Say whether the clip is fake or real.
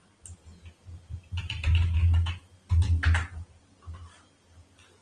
real